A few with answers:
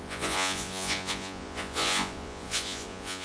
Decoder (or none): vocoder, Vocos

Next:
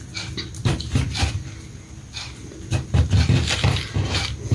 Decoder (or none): none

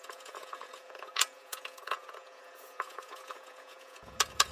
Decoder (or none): vocoder, Vocos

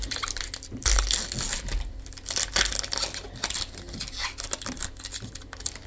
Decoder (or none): none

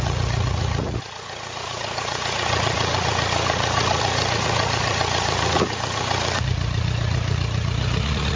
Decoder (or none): vocoder, Vocos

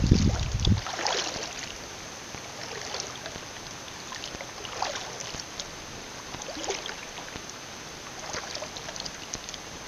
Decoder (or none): none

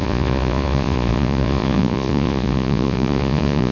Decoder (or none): vocoder, Vocos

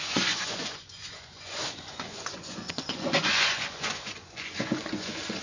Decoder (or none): vocoder, Vocos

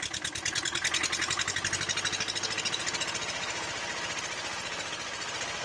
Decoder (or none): none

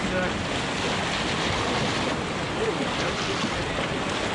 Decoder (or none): none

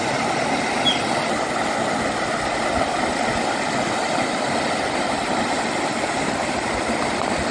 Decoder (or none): none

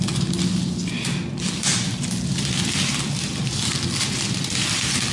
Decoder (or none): none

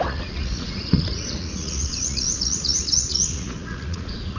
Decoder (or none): vocoder, Vocos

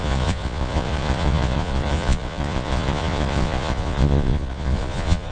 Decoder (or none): vocoder, Vocos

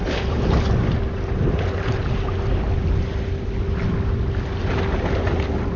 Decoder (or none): none